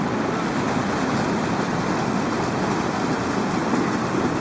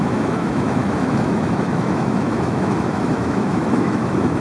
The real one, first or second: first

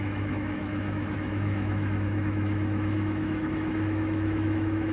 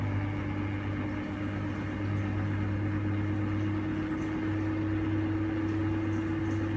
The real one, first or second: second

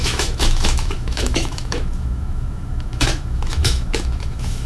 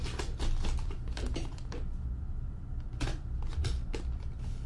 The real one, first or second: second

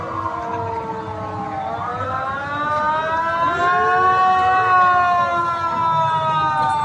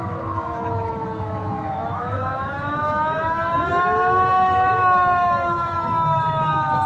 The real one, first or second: first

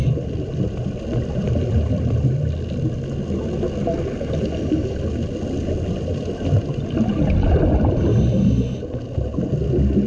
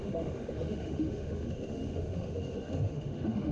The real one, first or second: first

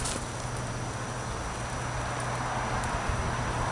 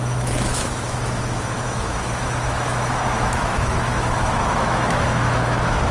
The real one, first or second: first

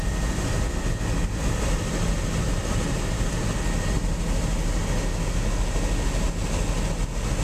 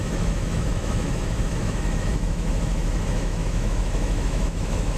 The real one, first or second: first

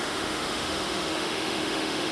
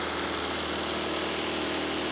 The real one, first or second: second